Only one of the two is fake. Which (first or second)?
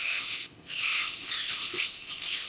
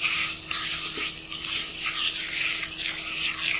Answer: first